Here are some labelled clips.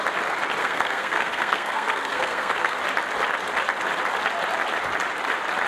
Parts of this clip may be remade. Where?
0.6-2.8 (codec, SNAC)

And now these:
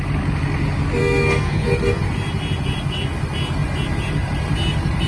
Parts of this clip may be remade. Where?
1.0-2.0 (codec, SNAC)